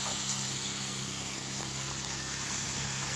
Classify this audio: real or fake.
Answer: fake